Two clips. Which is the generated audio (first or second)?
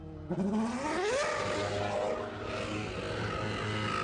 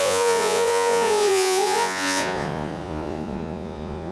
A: second